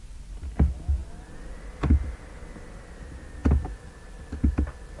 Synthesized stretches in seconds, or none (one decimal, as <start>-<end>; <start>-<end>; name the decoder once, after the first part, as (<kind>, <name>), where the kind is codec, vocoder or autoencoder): none